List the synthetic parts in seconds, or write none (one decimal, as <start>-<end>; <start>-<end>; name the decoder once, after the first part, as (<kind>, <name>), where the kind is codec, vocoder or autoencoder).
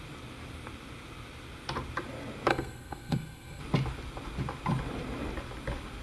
2.5-3.6 (codec, SNAC)